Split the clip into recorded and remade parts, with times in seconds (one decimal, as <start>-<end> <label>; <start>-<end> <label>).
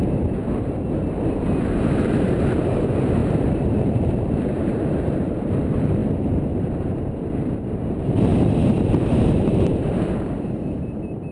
0.0-0.4 remade; 0.4-1.7 recorded; 1.7-6.0 remade; 6.0-6.6 recorded; 6.6-11.3 remade